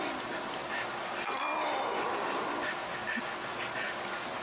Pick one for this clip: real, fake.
real